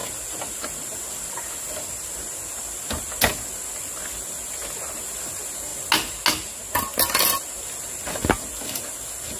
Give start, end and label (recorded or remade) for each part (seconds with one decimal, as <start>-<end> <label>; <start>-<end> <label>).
0.0-9.4 recorded